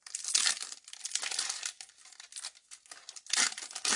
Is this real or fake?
real